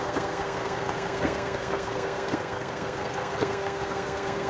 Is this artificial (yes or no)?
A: yes